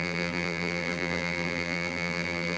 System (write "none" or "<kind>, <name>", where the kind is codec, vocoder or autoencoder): vocoder, BigVGAN v2